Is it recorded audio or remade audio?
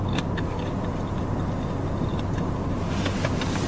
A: recorded